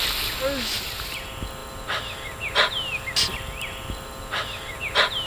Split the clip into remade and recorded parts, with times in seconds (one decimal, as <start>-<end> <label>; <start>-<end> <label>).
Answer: 0.0-5.3 recorded